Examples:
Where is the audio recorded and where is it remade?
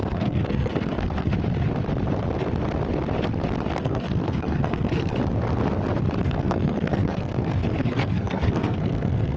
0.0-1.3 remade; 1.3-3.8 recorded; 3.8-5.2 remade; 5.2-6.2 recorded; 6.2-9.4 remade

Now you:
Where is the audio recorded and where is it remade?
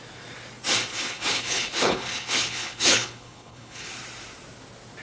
0.0-0.9 recorded; 0.9-3.9 remade; 3.9-5.0 recorded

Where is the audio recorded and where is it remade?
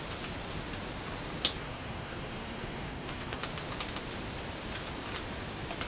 0.0-1.6 recorded; 1.6-3.4 remade; 3.4-5.9 recorded